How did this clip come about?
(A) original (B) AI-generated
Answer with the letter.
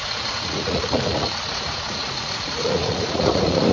B